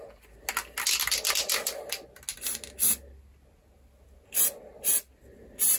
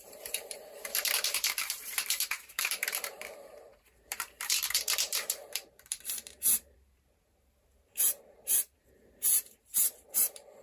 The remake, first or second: second